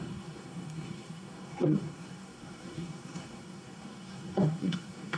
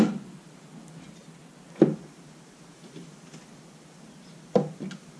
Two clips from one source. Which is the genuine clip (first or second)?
second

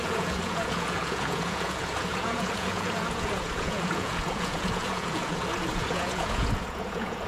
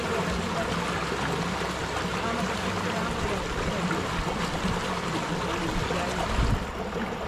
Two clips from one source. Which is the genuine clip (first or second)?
second